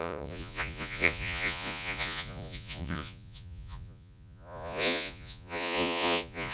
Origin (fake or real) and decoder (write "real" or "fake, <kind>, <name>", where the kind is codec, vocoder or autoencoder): fake, vocoder, Vocos